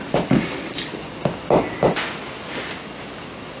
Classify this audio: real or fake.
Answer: real